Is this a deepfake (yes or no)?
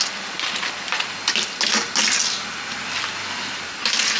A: no